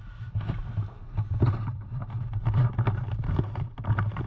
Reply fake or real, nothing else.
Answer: real